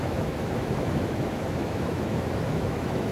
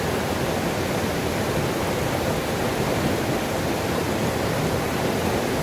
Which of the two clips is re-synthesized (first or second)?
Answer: first